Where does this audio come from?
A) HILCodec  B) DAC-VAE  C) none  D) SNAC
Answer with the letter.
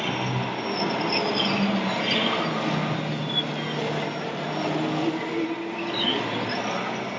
C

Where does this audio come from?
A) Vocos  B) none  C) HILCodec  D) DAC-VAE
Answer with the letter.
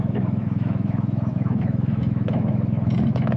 D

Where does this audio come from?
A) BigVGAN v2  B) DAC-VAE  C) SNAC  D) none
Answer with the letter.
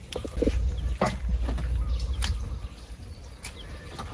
D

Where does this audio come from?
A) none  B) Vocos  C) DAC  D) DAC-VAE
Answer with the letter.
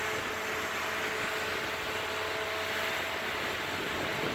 A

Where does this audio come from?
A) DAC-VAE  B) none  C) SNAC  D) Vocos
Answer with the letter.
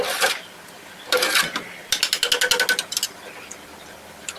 B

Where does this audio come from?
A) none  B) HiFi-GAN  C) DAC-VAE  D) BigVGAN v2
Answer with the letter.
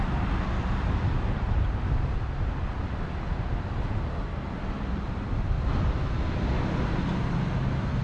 A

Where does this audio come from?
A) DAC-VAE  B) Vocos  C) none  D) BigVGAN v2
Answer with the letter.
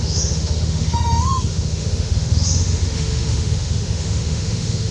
A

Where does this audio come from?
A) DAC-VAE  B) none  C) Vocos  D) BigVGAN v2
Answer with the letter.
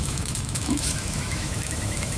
A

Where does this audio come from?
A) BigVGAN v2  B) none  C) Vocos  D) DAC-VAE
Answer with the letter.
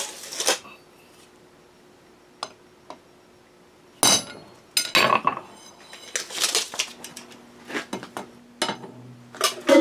B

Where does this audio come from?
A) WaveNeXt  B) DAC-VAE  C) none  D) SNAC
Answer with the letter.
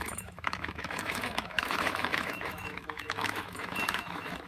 B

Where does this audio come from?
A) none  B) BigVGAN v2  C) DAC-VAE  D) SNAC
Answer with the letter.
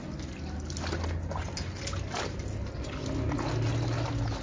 A